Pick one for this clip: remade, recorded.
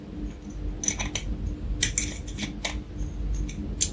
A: recorded